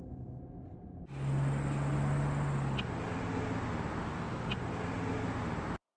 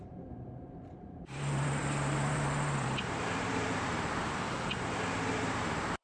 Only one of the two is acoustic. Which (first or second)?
first